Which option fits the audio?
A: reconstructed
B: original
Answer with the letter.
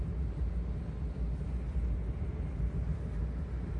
B